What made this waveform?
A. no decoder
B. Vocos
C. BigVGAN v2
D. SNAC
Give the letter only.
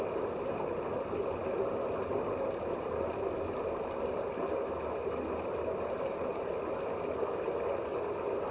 A